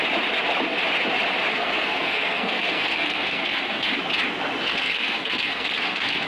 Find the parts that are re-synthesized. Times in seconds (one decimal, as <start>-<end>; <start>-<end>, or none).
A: 1.5-3.9; 4.7-6.3